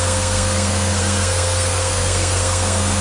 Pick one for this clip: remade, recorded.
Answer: remade